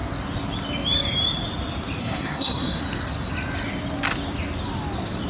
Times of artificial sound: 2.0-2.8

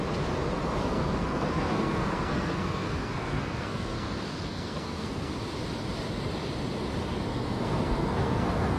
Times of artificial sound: 0.8-5.3; 7.3-8.8

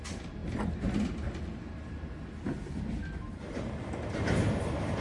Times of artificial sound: none

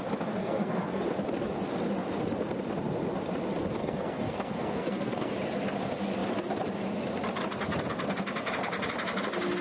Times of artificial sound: 0.4-1.0; 3.8-5.3